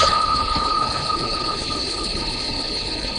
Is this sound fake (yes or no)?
yes